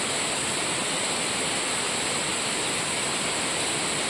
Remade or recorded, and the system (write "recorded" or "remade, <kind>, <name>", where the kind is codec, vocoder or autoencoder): recorded